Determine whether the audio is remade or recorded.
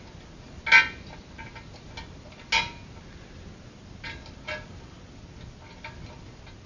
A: recorded